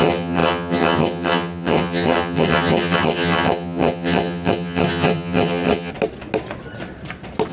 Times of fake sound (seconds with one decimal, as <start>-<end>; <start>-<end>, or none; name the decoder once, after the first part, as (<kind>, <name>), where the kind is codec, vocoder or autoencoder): 0.0-5.9 (vocoder, HiFi-GAN)

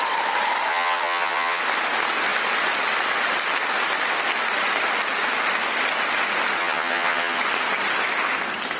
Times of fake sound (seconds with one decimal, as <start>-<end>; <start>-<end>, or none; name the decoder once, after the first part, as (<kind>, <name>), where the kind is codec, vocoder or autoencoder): 0.7-1.6 (vocoder, HiFi-GAN); 6.6-7.4

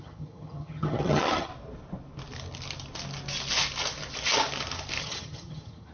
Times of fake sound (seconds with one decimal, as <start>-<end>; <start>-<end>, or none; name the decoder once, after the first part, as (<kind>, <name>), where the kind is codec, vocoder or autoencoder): 0.0-1.5 (vocoder, HiFi-GAN); 5.0-5.9

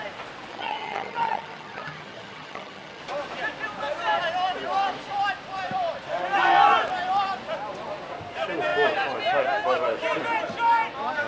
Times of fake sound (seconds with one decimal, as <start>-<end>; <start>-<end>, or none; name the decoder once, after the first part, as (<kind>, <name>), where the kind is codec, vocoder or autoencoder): 0.5-3.0 (vocoder, HiFi-GAN)